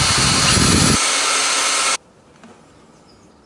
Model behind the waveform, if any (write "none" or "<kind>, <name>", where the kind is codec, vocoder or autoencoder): none